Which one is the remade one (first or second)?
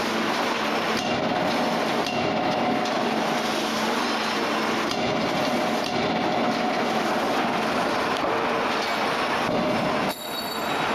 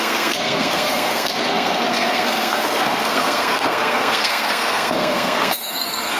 second